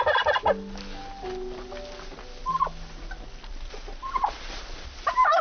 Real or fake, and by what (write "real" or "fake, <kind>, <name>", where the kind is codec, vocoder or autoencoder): real